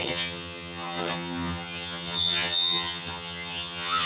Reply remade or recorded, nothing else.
remade